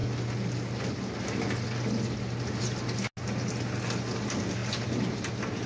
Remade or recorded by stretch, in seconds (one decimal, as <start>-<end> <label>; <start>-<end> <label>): 0.0-5.7 recorded